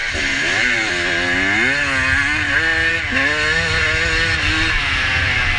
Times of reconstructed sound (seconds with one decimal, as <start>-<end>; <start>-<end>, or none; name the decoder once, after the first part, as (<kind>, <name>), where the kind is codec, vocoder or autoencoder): 0.0-0.9 (vocoder, BigVGAN v2)